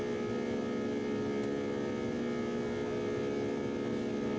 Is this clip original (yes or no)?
yes